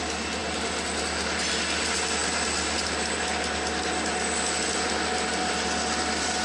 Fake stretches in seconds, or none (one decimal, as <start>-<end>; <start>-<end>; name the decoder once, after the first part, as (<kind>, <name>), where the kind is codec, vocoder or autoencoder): none